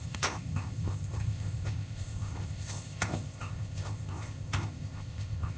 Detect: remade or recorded remade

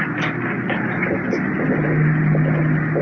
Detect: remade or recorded recorded